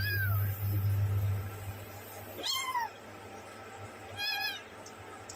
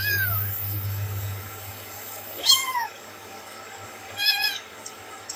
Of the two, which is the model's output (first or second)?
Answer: second